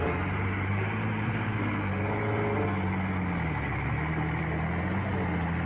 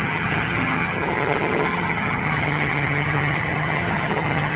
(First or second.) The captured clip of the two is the first